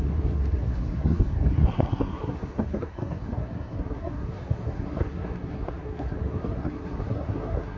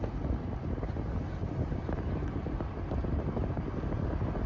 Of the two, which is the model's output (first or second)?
first